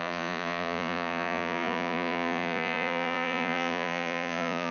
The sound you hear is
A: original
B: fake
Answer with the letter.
B